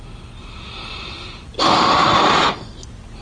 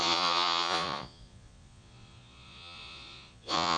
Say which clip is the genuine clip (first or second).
first